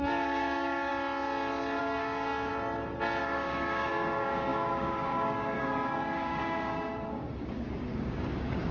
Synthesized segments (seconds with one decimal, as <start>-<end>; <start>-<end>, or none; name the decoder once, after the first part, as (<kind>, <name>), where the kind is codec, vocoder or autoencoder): 0.0-0.9 (codec, DAC); 1.8-2.5; 3.2-8.7